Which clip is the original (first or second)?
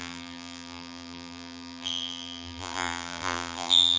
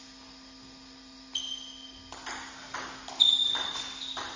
second